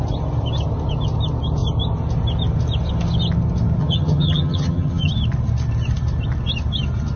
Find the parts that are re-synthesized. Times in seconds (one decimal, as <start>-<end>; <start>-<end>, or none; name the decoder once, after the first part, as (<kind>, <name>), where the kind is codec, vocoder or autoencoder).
3.8-5.1 (vocoder, HiFi-GAN)